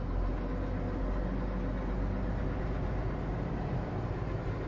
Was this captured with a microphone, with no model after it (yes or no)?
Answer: yes